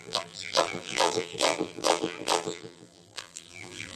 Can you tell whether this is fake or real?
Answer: fake